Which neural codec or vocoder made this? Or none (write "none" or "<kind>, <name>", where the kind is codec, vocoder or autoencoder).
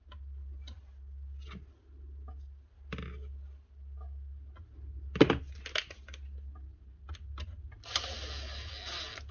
none